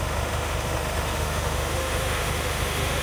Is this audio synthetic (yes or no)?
yes